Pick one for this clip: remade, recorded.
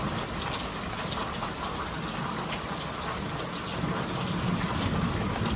recorded